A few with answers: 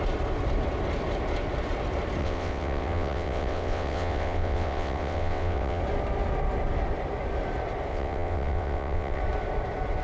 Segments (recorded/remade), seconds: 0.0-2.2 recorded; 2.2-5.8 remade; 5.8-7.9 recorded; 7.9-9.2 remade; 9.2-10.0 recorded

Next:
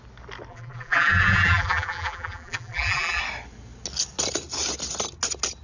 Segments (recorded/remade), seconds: 0.0-0.5 recorded; 0.5-3.2 remade; 3.2-5.6 recorded

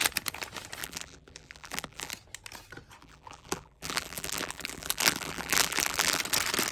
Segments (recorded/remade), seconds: 0.0-0.8 recorded; 0.8-2.1 remade; 2.1-3.0 recorded; 3.0-6.2 remade; 6.2-6.7 recorded

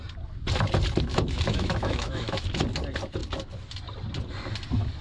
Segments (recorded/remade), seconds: 0.0-1.1 recorded; 1.1-2.6 remade; 2.6-5.0 recorded

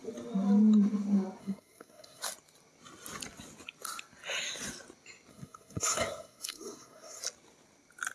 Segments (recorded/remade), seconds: 0.0-1.4 recorded; 1.4-2.2 remade; 2.2-5.3 recorded; 5.3-7.2 remade; 7.2-8.1 recorded

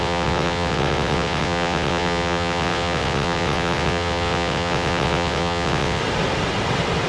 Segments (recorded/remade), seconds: 0.0-6.0 remade; 6.0-7.1 recorded

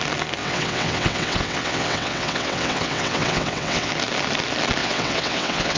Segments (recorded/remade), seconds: 0.0-0.4 recorded; 0.4-3.9 remade; 3.9-4.8 recorded; 4.8-5.8 remade

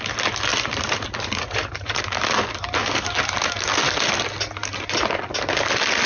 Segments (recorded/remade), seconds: 0.0-0.5 recorded; 0.5-2.0 remade; 2.0-6.1 recorded